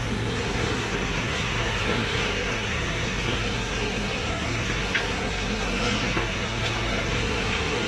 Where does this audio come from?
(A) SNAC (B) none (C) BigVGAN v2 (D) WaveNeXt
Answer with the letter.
A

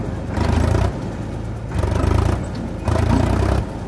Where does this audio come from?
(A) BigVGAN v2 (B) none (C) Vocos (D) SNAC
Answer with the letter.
B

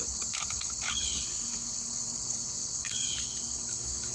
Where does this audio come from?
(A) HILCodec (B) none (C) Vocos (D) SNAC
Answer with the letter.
A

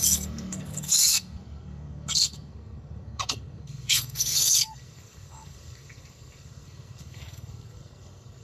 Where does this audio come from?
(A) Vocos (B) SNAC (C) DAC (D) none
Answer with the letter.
B